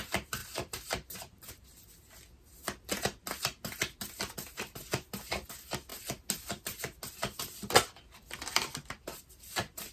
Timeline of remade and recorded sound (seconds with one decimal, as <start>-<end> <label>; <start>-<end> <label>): 0.0-0.4 recorded; 0.4-1.4 remade; 1.4-9.9 recorded